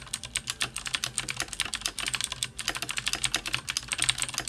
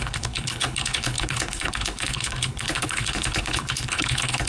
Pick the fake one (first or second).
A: second